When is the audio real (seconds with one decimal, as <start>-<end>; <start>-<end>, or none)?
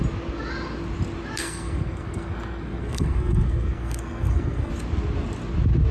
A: 0.0-1.4; 4.7-5.9